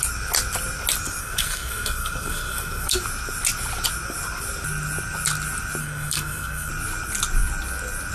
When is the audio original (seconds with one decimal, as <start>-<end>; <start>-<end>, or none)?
0.0-1.2; 3.0-5.8; 6.7-8.1